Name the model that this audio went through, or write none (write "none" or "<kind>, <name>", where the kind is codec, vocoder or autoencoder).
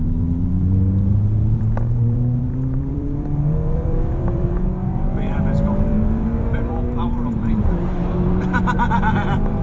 vocoder, BigVGAN v2